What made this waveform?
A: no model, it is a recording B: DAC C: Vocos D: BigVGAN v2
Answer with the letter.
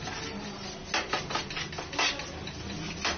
A